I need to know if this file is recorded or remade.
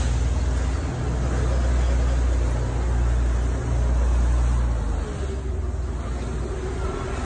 recorded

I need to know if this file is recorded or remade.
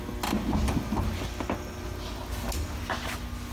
recorded